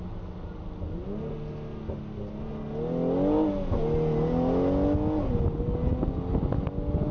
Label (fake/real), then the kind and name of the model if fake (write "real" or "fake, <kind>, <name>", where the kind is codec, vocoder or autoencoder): real